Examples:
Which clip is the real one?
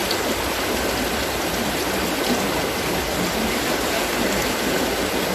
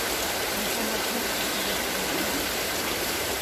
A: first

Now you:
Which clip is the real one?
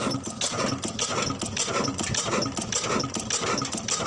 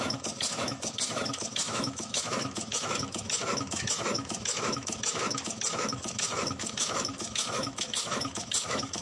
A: first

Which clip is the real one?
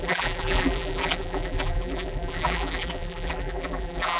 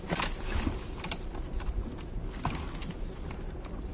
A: second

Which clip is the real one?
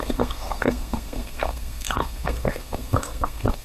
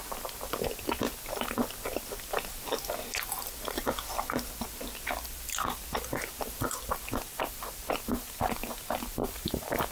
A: second